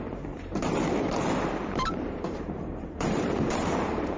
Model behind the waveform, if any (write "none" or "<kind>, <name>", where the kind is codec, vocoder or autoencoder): vocoder, BigVGAN v2